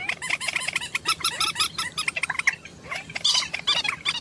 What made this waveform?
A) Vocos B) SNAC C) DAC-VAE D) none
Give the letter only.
D